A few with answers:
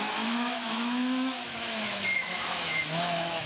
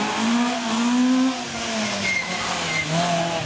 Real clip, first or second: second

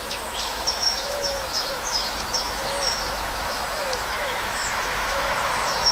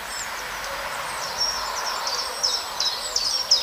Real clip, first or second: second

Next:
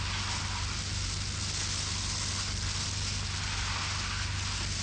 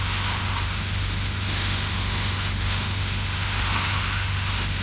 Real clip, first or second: first